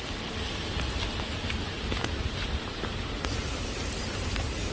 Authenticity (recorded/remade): recorded